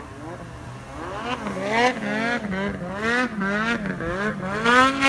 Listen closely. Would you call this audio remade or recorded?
recorded